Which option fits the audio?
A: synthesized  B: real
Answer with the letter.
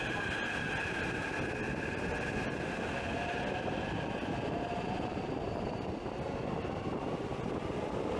B